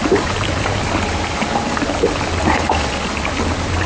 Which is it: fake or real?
real